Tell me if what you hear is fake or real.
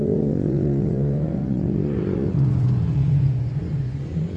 fake